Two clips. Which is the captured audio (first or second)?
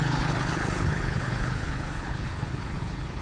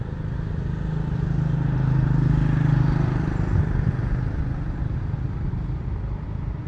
second